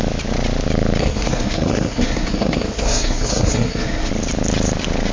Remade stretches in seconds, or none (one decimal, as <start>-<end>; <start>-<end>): 1.0-4.1